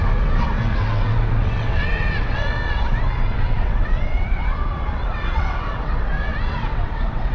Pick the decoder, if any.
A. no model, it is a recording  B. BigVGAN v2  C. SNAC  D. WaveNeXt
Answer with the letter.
D